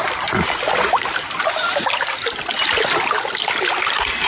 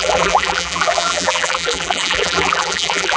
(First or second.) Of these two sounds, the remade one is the second